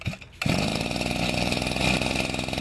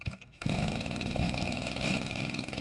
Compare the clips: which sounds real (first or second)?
first